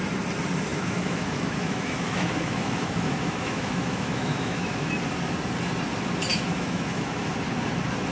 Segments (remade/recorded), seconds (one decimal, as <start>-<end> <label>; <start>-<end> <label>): 0.0-0.7 recorded; 0.7-4.9 remade; 4.9-6.3 recorded; 6.3-7.3 remade; 7.3-8.1 recorded